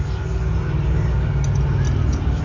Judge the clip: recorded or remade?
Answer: recorded